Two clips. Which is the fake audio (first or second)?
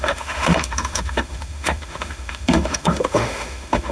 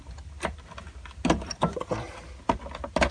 first